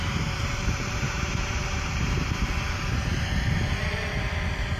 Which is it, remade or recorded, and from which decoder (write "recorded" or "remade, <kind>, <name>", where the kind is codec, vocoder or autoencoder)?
remade, vocoder, BigVGAN v2